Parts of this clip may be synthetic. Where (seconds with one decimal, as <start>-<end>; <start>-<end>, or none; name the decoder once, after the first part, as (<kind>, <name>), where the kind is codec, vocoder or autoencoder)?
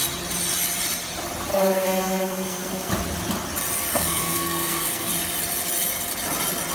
1.5-2.9 (codec, SNAC); 3.9-5.1